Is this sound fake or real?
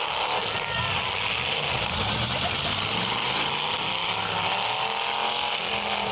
real